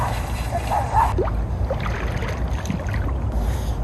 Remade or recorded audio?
recorded